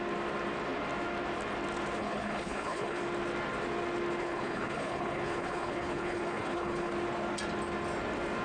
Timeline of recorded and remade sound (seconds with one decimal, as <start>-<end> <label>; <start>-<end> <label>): 0.0-2.0 recorded; 2.0-3.0 remade; 3.0-4.2 recorded; 4.2-6.9 remade; 6.9-8.4 recorded